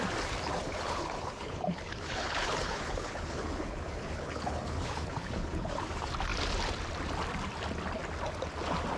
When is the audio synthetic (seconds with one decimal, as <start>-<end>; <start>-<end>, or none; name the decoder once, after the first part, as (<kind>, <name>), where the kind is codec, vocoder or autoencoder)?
0.6-5.8 (codec, HILCodec)